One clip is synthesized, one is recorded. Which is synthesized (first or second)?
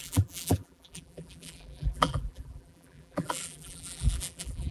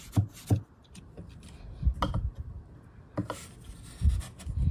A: first